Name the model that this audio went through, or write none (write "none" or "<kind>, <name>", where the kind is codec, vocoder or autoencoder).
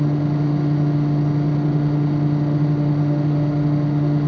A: none